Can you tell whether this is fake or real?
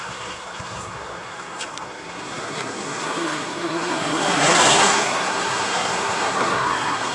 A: fake